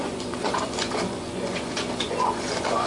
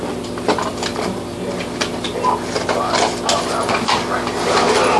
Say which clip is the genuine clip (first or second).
second